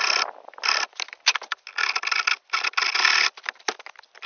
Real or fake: real